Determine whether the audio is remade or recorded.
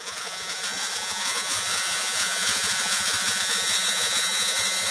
remade